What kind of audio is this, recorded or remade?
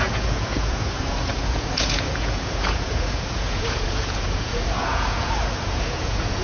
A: remade